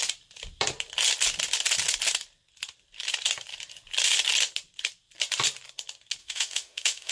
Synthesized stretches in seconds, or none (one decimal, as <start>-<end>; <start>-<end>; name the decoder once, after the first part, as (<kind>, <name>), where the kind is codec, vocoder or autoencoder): 6.2-7.1 (autoencoder, DAC-VAE)